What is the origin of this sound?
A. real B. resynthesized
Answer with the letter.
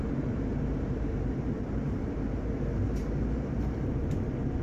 B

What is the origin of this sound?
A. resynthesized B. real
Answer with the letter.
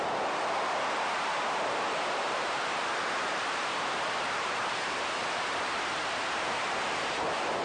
A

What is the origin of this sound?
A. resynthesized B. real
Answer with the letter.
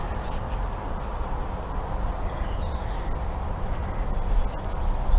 B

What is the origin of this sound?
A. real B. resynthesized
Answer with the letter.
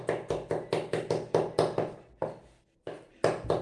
A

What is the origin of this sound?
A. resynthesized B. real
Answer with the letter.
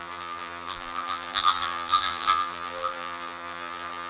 A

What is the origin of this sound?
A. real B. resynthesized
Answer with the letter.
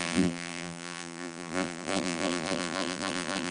B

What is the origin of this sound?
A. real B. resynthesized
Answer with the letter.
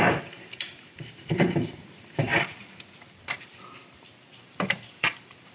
B